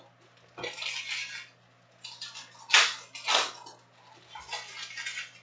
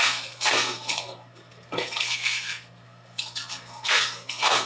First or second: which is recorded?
first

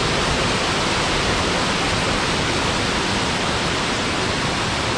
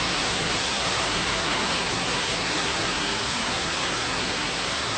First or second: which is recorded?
first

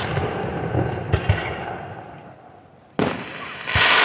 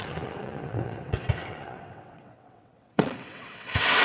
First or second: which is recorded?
first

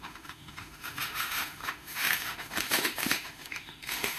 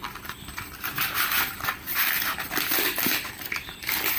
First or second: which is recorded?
second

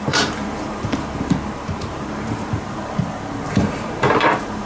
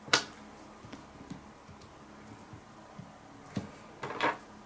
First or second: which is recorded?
second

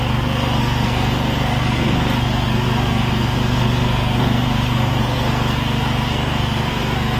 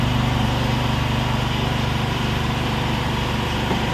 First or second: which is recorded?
second